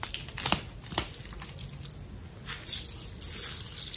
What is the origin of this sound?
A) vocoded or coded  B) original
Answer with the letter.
B